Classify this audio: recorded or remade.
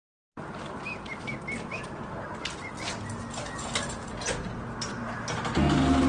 recorded